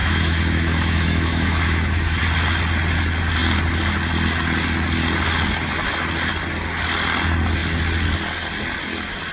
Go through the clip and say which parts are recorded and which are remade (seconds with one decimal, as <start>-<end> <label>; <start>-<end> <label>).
0.0-2.2 remade; 2.2-9.3 recorded